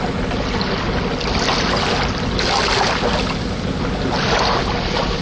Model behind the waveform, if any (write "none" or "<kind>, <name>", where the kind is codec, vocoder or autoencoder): none